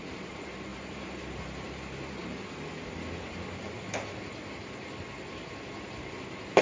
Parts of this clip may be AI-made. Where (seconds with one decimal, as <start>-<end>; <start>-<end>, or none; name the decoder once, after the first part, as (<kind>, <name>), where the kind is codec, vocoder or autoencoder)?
0.0-2.2 (vocoder, BigVGAN v2)

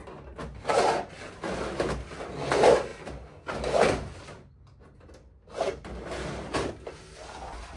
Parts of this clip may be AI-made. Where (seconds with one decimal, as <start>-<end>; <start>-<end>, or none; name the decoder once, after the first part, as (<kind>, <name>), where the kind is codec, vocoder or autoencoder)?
none

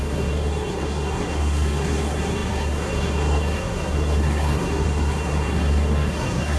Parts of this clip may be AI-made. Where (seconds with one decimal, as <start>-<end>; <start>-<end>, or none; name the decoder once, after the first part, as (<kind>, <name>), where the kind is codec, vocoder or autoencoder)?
0.0-6.6 (codec, SNAC)

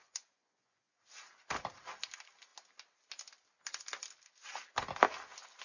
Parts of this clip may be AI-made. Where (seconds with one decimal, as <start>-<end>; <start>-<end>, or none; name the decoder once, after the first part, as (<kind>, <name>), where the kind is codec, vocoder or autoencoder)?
0.0-1.0 (vocoder, Vocos)

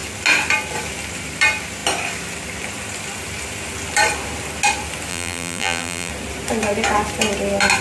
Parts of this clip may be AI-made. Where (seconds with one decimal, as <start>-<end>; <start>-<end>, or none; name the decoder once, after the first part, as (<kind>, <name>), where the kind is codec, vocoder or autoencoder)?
5.1-6.1 (vocoder, BigVGAN v2)

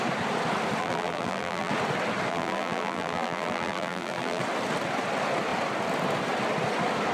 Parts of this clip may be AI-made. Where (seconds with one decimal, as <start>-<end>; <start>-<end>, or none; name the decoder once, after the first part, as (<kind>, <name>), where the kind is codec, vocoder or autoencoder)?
0.8-1.7 (vocoder, BigVGAN v2); 2.3-4.4

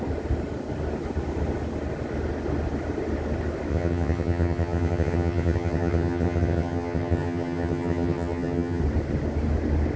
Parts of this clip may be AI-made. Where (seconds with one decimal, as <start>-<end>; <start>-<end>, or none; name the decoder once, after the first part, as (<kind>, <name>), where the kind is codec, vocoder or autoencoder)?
3.7-8.8 (vocoder, HiFi-GAN)